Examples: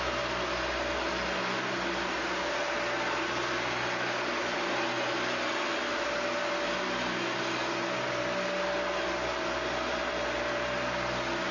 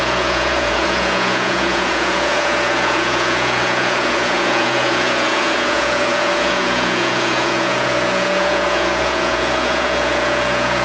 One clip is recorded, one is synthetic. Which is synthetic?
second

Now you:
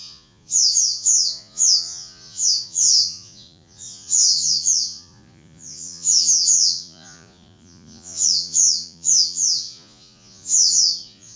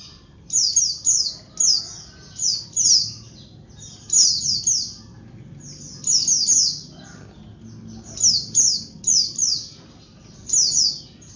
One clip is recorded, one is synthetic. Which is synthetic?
first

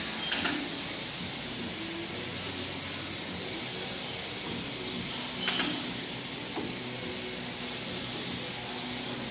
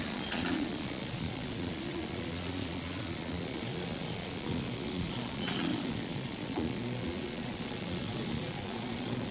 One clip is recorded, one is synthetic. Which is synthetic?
second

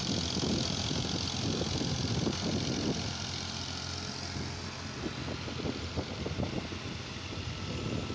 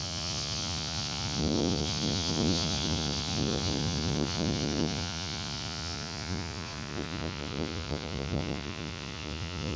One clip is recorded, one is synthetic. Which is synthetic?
second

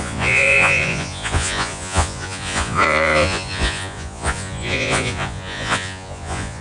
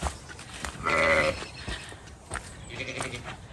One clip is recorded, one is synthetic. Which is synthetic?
first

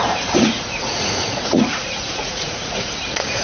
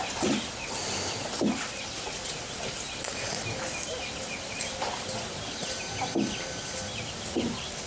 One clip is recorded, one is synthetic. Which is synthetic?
first